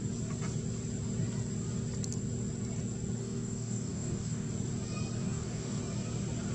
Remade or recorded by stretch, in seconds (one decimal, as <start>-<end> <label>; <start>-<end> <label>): 0.0-3.2 recorded; 3.2-4.5 remade; 4.5-5.2 recorded; 5.2-5.8 remade; 5.8-6.5 recorded